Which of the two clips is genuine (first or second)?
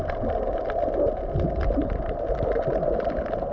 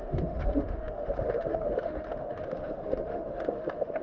first